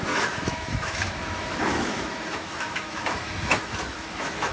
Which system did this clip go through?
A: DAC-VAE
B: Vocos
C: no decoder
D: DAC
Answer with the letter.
A